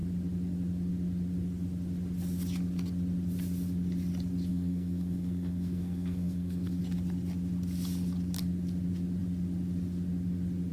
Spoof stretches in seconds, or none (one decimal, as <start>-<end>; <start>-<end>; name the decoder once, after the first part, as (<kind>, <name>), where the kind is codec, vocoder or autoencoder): 4.5-6.8 (codec, SNAC)